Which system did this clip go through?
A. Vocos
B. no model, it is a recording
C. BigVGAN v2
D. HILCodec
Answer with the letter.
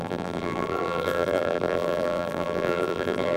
C